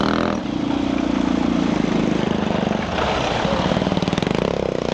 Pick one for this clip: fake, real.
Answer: real